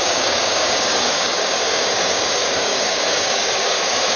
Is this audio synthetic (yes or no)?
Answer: yes